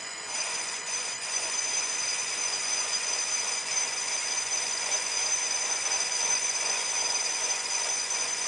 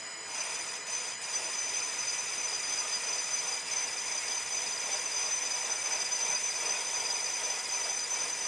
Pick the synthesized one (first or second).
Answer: first